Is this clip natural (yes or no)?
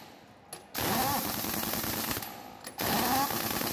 yes